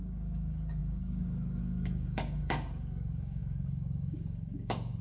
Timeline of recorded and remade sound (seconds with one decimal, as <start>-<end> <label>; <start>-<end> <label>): 0.0-5.0 remade